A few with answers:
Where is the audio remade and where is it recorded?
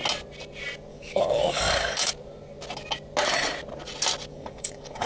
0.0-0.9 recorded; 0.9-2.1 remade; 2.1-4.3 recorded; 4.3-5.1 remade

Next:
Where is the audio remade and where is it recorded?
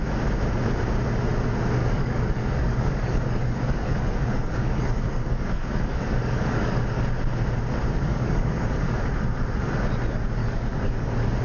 0.0-1.8 recorded; 1.8-7.0 remade; 7.0-8.1 recorded; 8.1-9.0 remade; 9.0-10.4 recorded; 10.4-11.4 remade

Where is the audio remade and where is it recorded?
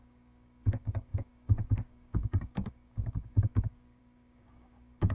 0.0-5.1 remade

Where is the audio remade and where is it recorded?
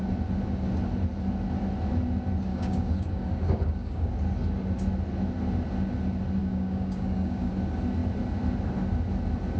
0.0-2.5 recorded; 2.5-4.1 remade; 4.1-6.4 recorded; 6.4-7.5 remade; 7.5-9.6 recorded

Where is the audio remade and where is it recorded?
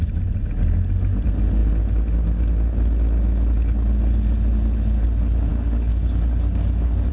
0.0-5.5 recorded; 5.5-7.1 remade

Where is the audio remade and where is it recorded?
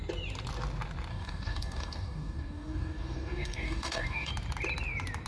0.0-1.1 recorded; 1.1-4.3 remade; 4.3-5.3 recorded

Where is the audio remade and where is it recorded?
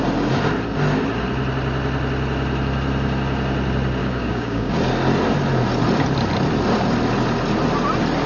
0.0-4.0 recorded; 4.0-4.7 remade; 4.7-8.3 recorded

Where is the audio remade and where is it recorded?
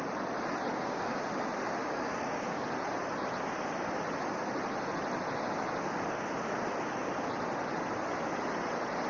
0.0-0.7 recorded; 0.7-1.2 remade; 1.2-1.8 recorded; 1.8-2.6 remade; 2.6-9.1 recorded